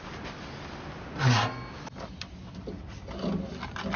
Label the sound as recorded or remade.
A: recorded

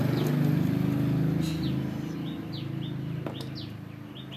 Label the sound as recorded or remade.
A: recorded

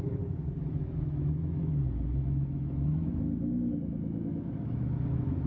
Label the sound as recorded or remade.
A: remade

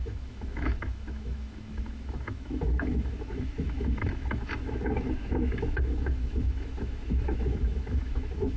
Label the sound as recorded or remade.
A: remade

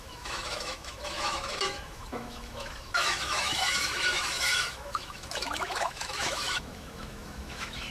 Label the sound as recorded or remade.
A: remade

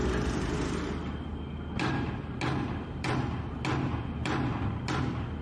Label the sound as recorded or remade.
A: recorded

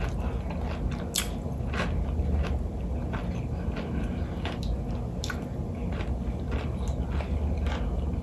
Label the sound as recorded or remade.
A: recorded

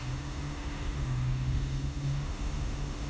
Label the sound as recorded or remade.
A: remade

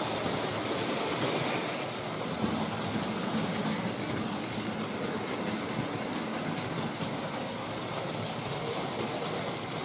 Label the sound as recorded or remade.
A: recorded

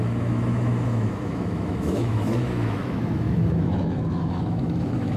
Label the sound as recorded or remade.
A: remade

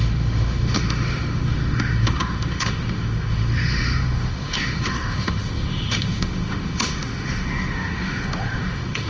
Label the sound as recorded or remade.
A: remade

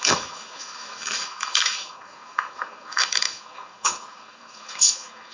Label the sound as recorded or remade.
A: remade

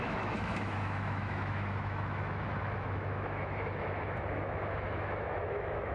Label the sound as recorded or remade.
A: remade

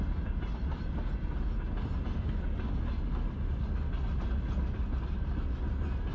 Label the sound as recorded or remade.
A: recorded